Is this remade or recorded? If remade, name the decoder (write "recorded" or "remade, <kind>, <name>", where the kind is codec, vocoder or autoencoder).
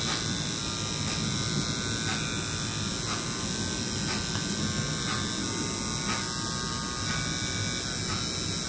recorded